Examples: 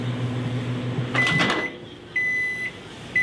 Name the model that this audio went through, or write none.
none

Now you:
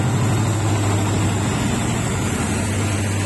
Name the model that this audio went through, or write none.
none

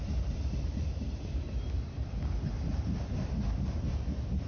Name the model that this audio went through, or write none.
vocoder, BigVGAN v2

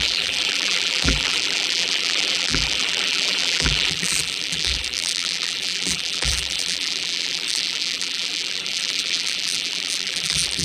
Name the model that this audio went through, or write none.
vocoder, BigVGAN v2